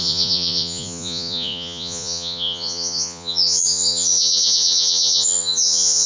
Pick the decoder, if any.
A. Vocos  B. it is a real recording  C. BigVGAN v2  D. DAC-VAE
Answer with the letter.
A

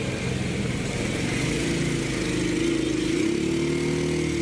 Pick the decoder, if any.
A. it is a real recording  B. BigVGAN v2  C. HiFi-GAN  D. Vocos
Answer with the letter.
A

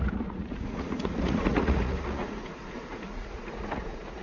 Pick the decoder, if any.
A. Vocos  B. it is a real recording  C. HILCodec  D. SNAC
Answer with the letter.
A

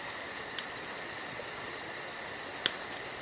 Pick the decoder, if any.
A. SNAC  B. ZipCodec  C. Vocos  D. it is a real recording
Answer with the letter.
D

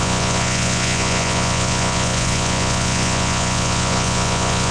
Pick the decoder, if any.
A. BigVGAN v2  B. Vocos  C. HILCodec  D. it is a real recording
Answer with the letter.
B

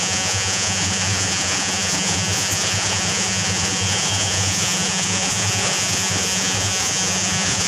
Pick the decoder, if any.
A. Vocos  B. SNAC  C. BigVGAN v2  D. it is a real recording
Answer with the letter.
A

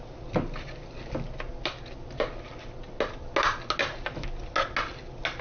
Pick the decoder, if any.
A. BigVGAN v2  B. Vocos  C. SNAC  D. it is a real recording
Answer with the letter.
D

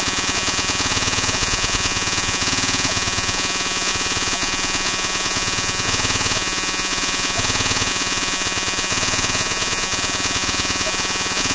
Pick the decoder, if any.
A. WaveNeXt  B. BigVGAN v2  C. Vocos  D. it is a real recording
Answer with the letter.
C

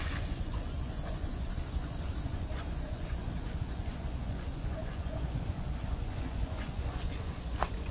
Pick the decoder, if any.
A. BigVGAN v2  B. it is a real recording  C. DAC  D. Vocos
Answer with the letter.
D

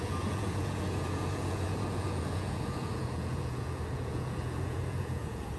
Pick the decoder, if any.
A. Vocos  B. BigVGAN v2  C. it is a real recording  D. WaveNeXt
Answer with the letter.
A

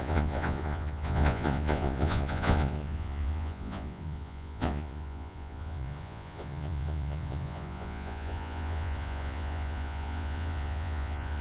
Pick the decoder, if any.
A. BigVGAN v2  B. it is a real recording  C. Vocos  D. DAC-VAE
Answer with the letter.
C